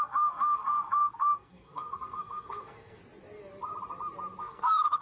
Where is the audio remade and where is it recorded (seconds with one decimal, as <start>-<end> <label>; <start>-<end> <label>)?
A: 0.0-3.0 remade; 3.0-4.4 recorded; 4.4-5.0 remade